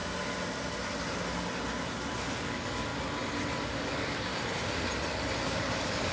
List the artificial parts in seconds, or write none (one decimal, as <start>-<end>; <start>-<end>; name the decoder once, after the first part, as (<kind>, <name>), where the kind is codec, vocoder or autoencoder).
2.4-2.9 (codec, DAC); 3.6-4.3; 5.4-6.1